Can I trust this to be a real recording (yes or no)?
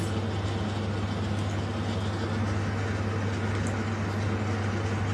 yes